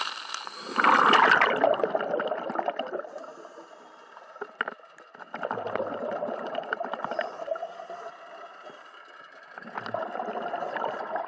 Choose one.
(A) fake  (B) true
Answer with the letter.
B